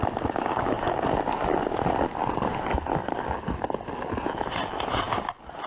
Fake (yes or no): no